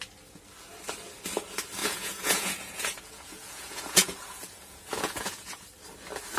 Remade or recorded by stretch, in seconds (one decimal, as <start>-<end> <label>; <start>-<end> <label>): 0.0-1.8 recorded; 1.8-5.6 remade; 5.6-6.4 recorded